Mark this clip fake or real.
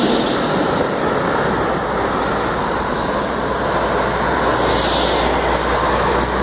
real